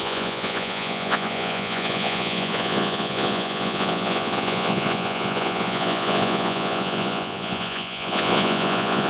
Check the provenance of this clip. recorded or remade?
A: remade